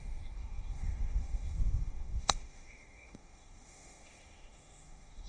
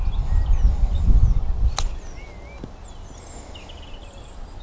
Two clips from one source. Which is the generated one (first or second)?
first